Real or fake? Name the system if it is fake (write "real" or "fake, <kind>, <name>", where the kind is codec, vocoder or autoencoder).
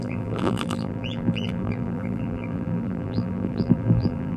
fake, vocoder, BigVGAN v2